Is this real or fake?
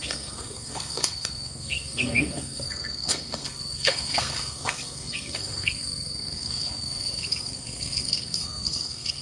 fake